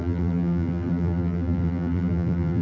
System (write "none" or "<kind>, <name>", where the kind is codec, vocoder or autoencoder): vocoder, BigVGAN v2